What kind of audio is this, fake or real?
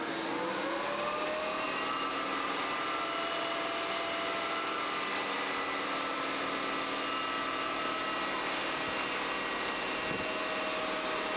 real